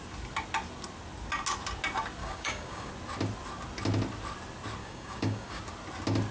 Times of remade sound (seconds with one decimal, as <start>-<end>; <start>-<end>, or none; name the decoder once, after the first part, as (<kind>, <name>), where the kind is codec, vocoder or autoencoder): 2.2-2.9 (codec, DAC); 4.8-5.6